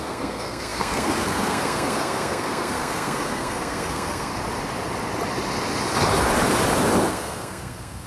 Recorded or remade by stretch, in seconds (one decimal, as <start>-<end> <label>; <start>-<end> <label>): 0.0-4.3 remade; 4.3-7.1 recorded; 7.1-8.1 remade